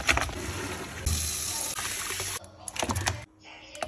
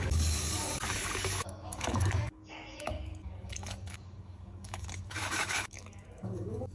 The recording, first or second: first